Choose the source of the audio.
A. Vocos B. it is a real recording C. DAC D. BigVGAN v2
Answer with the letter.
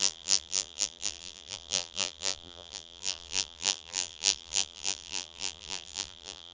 D